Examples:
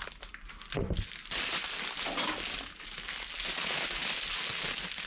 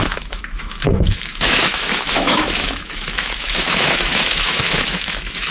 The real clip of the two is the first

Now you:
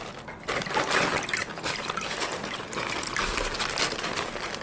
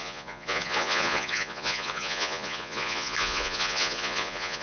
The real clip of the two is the first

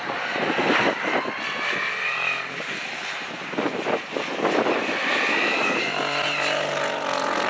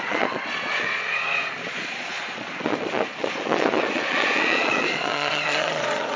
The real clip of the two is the first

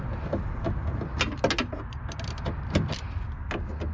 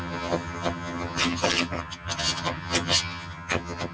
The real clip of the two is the first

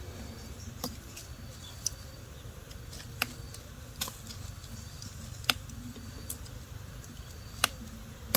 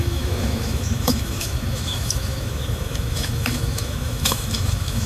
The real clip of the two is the first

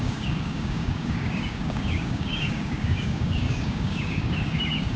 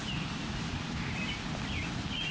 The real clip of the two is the second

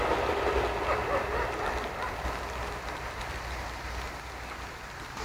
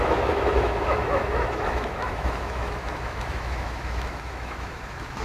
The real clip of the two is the first